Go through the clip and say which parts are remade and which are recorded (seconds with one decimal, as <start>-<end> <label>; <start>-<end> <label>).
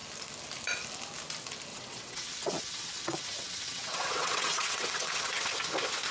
0.0-1.7 recorded; 1.7-5.4 remade; 5.4-6.1 recorded